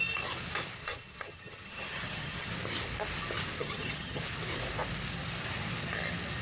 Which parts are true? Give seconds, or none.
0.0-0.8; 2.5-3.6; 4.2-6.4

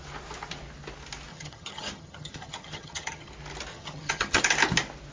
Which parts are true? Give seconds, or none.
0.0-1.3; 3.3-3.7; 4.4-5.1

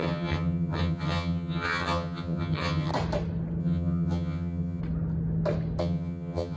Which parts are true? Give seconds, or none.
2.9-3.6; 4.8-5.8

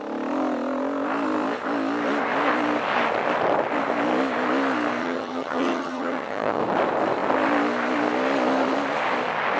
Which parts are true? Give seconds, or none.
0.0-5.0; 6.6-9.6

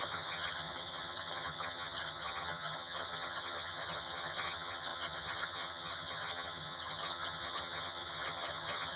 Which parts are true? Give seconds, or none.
none

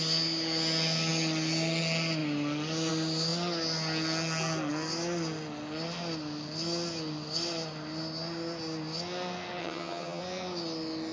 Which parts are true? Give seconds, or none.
0.0-9.6; 10.2-11.1